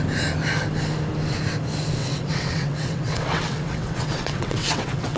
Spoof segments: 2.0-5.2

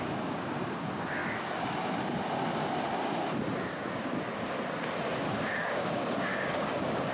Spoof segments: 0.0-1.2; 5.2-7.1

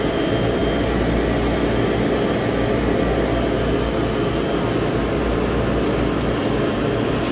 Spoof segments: none

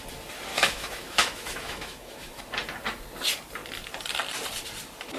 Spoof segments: 0.5-2.4